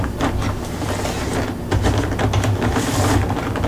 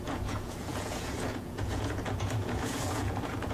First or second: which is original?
first